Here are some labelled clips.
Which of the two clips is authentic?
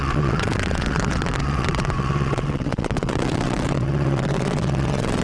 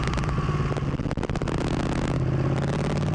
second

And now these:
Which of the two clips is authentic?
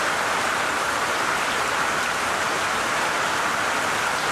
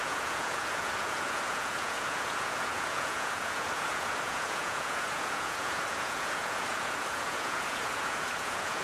first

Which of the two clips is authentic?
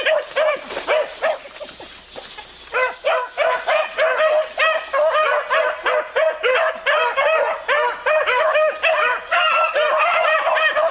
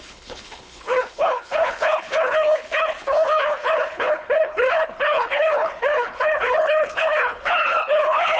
first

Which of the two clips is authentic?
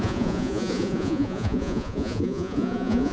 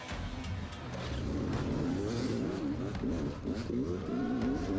second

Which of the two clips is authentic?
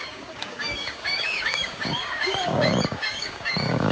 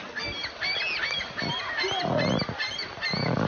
second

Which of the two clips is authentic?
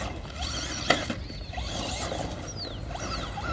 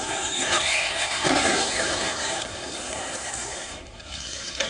first